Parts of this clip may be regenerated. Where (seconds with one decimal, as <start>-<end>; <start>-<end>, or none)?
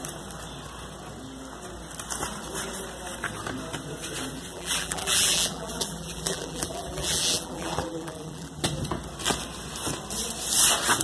4.5-8.6